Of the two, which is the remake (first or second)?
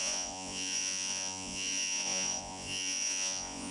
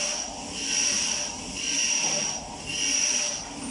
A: first